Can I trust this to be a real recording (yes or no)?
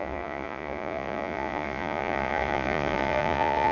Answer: no